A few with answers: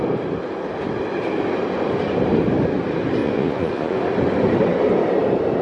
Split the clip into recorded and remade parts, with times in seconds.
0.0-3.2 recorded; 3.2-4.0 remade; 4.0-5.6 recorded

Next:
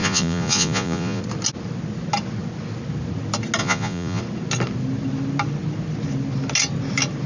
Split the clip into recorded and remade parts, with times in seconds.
0.0-1.2 remade; 1.2-3.6 recorded; 3.6-4.2 remade; 4.2-7.3 recorded

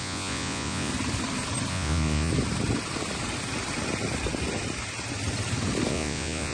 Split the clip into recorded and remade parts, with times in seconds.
0.0-0.9 remade; 0.9-1.7 recorded; 1.7-2.3 remade; 2.3-5.9 recorded; 5.9-6.5 remade

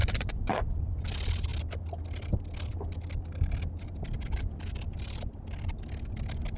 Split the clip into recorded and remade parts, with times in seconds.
0.0-0.7 remade; 0.7-6.6 recorded

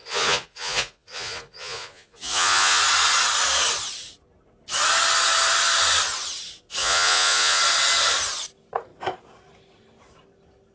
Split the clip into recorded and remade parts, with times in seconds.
0.0-2.8 remade; 2.8-6.8 recorded; 6.8-7.6 remade; 7.6-10.7 recorded

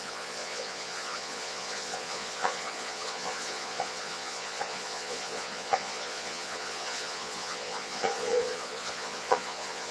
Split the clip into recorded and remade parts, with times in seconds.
0.0-9.9 remade